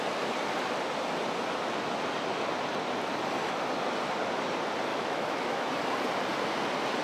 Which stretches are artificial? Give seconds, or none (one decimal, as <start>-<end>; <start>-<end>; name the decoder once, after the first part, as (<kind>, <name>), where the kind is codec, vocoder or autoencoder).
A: 4.9-5.7 (autoencoder, DAC-VAE)